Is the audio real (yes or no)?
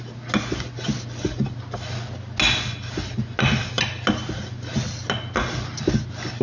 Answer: yes